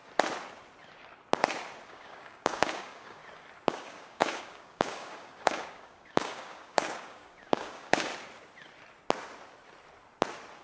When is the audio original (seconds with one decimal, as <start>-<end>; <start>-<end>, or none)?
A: 0.0-1.9; 3.2-3.7; 8.1-10.6